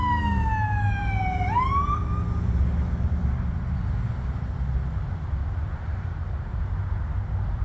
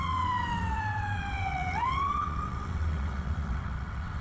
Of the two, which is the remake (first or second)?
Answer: second